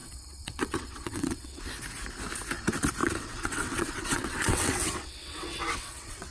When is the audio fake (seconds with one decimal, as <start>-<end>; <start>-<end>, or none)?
0.0-1.6; 3.0-6.3